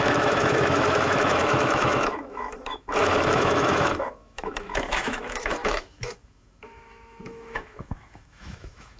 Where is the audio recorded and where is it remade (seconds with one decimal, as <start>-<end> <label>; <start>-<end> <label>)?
0.0-9.0 remade